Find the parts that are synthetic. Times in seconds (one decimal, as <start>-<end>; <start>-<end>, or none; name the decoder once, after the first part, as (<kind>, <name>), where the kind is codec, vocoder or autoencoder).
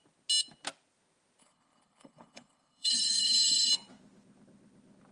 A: 1.4-3.7 (codec, HILCodec)